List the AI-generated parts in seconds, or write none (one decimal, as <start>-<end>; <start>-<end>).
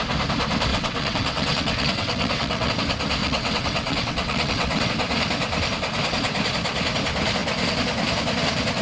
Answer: 0.7-2.7; 3.2-4.9